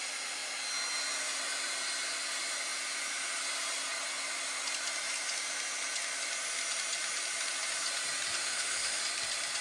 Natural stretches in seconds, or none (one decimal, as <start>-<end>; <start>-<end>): 0.0-8.4; 9.0-9.6